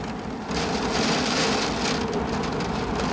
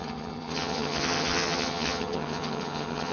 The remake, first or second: second